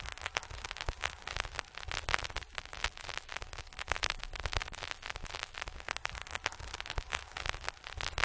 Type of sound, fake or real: real